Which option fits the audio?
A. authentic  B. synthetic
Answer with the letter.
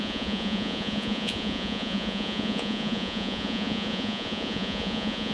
B